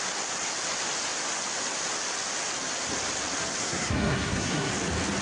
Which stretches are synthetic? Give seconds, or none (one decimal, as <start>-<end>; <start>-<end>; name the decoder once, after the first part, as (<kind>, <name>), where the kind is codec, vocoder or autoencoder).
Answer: 3.6-4.7 (codec, SNAC)